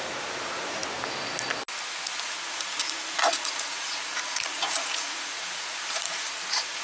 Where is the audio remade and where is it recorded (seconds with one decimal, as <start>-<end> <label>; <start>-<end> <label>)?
0.0-0.8 remade; 0.8-2.2 recorded; 2.2-6.8 remade